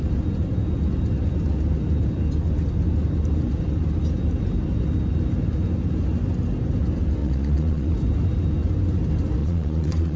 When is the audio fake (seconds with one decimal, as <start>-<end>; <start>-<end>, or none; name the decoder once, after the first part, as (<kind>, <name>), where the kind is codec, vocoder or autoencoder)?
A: 7.2-7.9 (vocoder, Vocos); 9.4-10.2

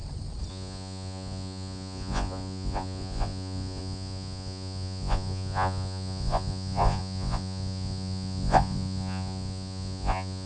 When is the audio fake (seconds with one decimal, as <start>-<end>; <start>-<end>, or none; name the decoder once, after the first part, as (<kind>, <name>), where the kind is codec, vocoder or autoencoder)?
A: 0.5-10.5 (vocoder, Vocos)

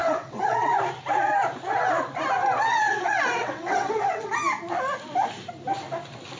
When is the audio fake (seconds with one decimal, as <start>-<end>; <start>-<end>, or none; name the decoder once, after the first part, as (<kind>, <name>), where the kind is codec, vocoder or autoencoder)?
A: 0.0-0.8 (vocoder, WaveNeXt); 2.4-4.3

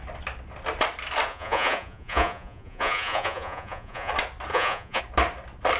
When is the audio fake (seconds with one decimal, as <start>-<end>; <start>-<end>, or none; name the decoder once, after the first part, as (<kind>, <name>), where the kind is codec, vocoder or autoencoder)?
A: 1.3-4.1 (vocoder, Vocos); 4.5-5.0

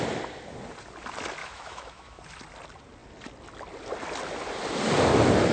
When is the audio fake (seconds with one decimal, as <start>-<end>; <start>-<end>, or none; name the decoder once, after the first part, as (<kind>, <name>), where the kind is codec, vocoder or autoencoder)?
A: 1.4-2.2 (autoencoder, DAC-VAE)

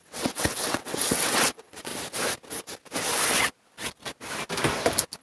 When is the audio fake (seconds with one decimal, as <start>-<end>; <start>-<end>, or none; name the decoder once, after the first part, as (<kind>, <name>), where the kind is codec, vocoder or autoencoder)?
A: 0.0-1.9 (vocoder, WaveNeXt)

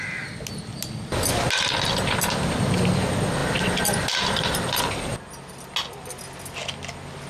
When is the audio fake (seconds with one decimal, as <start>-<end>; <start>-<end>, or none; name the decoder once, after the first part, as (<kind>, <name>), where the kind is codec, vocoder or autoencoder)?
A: 3.4-4.8 (vocoder, BigVGAN v2)